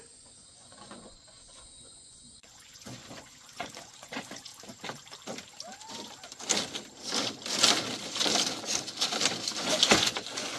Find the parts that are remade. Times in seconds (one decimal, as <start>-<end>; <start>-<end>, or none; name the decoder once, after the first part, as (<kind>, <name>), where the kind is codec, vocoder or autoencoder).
0.0-4.5 (vocoder, Vocos); 9.6-10.6